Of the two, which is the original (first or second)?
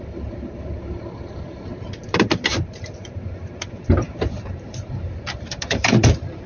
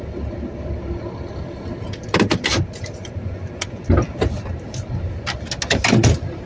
second